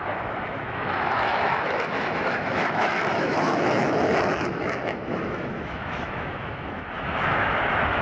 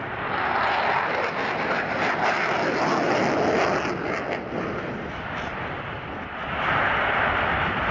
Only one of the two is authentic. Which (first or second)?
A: second